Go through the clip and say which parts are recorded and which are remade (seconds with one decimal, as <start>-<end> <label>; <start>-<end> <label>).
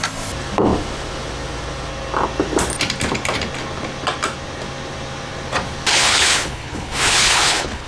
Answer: 0.0-5.9 recorded; 5.9-7.9 remade